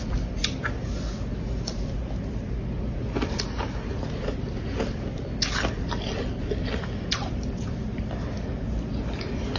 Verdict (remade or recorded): recorded